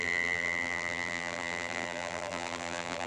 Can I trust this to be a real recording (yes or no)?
no